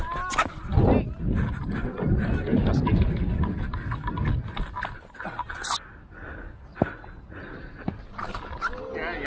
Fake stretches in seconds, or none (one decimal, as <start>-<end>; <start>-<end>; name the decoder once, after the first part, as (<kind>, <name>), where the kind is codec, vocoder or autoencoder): none